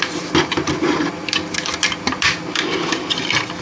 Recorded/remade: recorded